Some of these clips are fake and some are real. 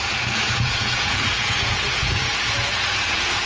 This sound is fake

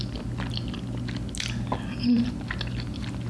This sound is real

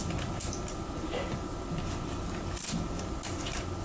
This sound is real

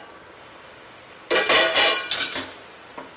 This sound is real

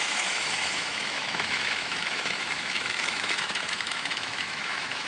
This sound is fake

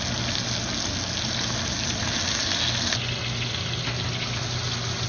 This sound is real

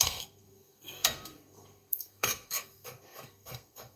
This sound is fake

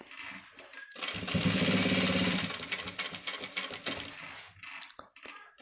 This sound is real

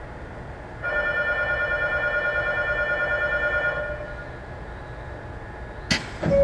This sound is real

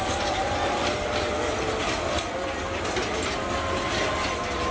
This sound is real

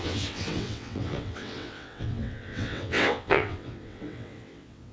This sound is fake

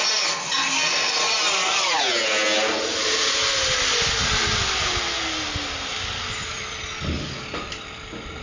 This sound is real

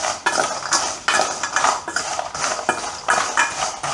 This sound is real